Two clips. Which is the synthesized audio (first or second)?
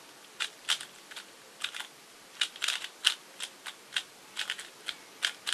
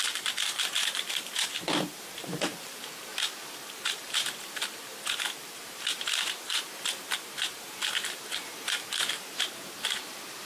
second